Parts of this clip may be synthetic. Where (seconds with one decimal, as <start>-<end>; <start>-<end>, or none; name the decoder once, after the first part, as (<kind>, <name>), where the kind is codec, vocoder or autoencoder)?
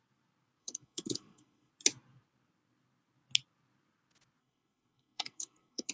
0.6-1.7 (codec, SNAC); 4.4-5.9